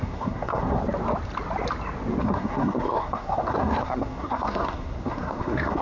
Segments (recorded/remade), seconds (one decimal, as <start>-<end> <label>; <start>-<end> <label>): 0.0-0.8 remade; 0.8-2.2 recorded; 2.2-5.8 remade